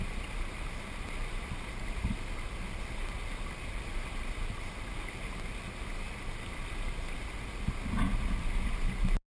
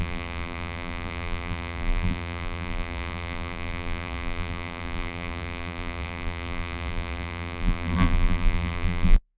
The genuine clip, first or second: first